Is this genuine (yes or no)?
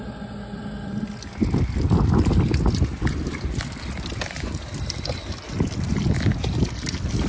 yes